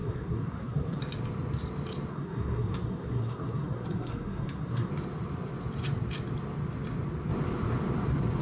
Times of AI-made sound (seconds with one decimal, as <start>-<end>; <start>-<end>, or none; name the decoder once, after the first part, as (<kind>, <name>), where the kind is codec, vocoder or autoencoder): 0.0-1.0 (codec, SNAC); 2.1-4.9